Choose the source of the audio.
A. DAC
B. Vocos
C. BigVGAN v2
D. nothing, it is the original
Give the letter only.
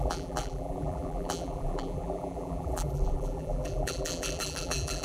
C